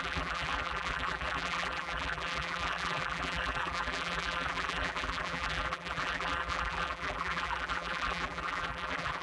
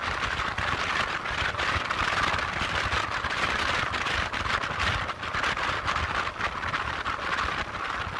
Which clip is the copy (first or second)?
first